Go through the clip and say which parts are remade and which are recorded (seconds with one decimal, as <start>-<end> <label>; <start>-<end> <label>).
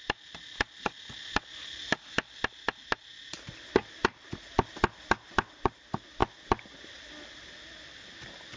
0.0-8.6 recorded